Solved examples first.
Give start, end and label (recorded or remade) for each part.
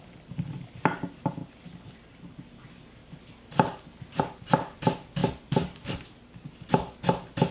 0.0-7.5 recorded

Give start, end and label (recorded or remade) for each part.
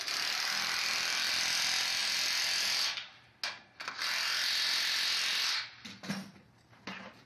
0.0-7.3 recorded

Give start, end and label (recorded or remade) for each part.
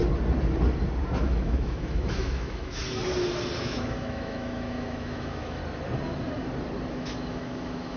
0.0-1.2 recorded; 1.2-2.8 remade; 2.8-3.6 recorded; 3.6-5.6 remade; 5.6-6.9 recorded; 6.9-8.0 remade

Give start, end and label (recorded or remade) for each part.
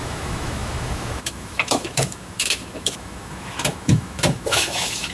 0.0-5.1 remade